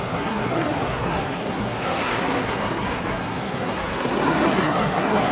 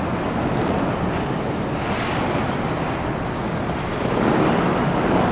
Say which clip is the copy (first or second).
first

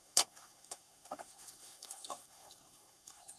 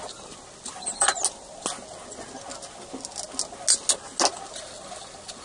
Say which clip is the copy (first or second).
first